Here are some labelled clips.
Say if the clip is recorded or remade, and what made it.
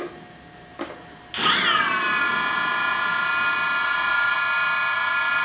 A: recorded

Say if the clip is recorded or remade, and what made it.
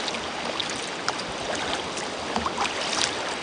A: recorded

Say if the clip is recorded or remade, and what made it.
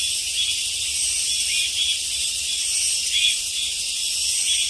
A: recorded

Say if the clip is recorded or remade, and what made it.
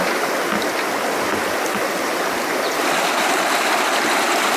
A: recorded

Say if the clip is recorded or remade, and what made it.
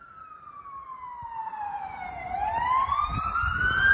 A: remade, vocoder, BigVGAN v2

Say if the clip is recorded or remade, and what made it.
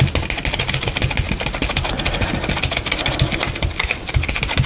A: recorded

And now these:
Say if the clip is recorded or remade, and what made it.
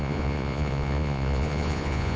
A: remade, vocoder, Vocos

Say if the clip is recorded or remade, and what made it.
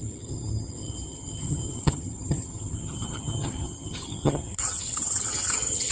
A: remade, vocoder, HiFi-GAN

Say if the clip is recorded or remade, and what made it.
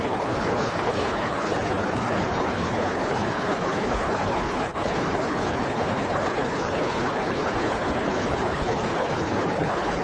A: remade, codec, HILCodec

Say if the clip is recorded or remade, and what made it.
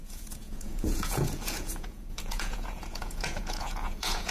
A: remade, vocoder, Vocos